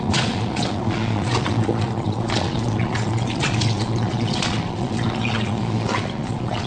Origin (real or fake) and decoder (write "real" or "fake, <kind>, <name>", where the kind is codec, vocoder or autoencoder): fake, vocoder, Vocos